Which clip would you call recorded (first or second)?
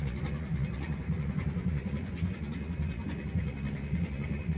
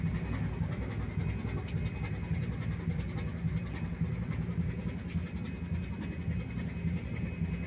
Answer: second